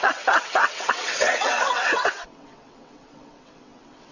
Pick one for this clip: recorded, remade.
remade